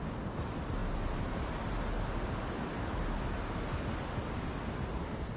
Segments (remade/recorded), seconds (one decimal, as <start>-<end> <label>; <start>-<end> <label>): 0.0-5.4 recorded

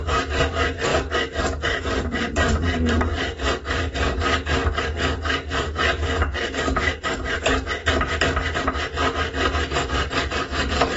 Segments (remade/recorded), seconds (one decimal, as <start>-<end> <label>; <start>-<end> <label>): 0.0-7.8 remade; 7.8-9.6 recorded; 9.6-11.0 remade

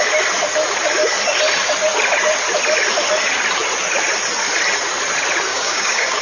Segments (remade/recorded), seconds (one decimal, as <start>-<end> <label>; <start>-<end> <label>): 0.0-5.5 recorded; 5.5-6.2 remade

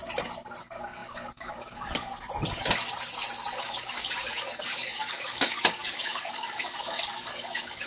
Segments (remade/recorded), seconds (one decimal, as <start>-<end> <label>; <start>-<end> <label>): 0.0-0.6 recorded; 0.6-2.1 remade; 2.1-3.6 recorded; 3.6-7.9 remade